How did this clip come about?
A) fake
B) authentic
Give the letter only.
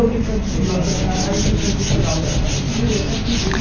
B